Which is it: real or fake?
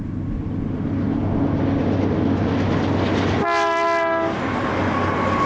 real